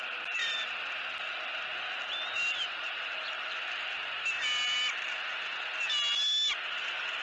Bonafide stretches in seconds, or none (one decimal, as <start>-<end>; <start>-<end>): 0.0-7.2